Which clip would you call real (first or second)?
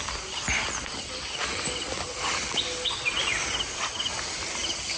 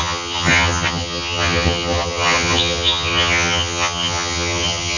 first